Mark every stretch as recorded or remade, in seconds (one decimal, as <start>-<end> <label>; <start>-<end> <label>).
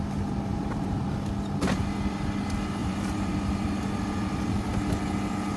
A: 0.0-0.5 recorded; 0.5-1.0 remade; 1.0-2.8 recorded; 2.8-3.3 remade; 3.3-5.6 recorded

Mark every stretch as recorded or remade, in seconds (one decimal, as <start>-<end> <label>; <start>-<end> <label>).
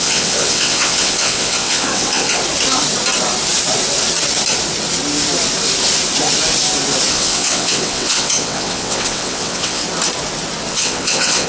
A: 0.0-2.4 remade; 2.4-7.1 recorded; 7.1-9.8 remade; 9.8-10.7 recorded; 10.7-11.5 remade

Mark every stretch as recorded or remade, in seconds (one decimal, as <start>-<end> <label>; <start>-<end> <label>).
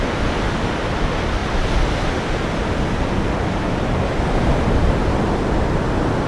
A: 0.0-6.3 recorded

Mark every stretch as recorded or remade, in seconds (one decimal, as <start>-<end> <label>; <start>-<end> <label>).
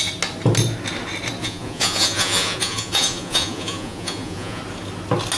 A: 0.0-1.4 recorded; 1.4-4.6 remade; 4.6-5.4 recorded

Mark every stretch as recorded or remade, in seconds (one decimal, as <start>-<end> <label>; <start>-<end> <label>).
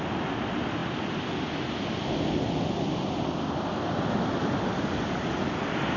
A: 0.0-6.0 recorded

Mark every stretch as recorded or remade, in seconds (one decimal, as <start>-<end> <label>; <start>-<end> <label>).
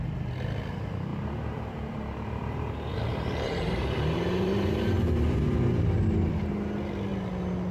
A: 0.0-1.1 recorded; 1.1-5.7 remade; 5.7-7.7 recorded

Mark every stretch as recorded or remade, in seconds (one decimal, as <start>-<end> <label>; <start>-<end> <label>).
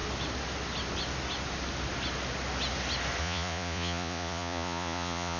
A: 0.0-3.2 recorded; 3.2-5.4 remade